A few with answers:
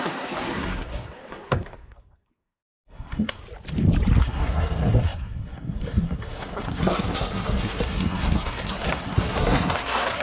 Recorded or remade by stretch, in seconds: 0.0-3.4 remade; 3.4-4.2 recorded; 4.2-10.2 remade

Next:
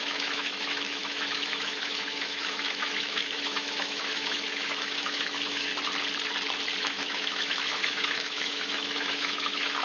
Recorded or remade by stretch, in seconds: 0.0-5.7 remade; 5.7-6.8 recorded; 6.8-9.8 remade

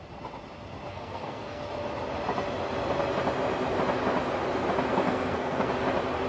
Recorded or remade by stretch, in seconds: 0.0-0.9 recorded; 0.9-1.6 remade; 1.6-4.9 recorded; 4.9-5.7 remade; 5.7-6.3 recorded

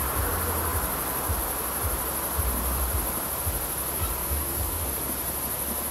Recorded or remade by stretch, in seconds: 0.0-4.2 recorded; 4.2-4.9 remade; 4.9-5.9 recorded

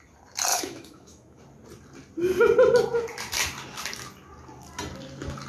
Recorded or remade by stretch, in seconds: 0.0-0.5 recorded; 0.5-1.4 remade; 1.4-5.5 recorded

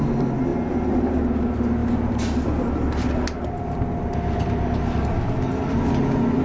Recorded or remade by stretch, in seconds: 0.0-6.4 recorded

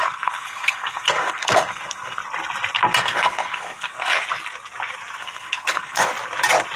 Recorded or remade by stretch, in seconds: 0.0-2.2 remade; 2.2-3.0 recorded; 3.0-4.2 remade; 4.2-5.2 recorded; 5.2-6.1 remade; 6.1-6.8 recorded

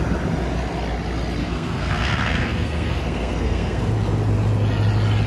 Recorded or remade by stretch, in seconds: 0.0-1.4 recorded; 1.4-3.9 remade; 3.9-5.3 recorded